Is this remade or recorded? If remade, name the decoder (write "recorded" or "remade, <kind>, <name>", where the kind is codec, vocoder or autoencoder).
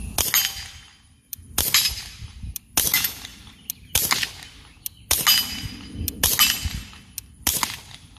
recorded